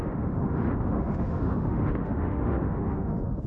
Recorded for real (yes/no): no